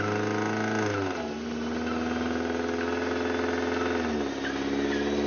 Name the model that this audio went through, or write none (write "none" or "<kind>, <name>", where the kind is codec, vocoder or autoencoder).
none